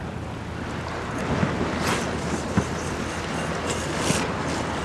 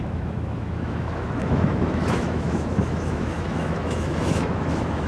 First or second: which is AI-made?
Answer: second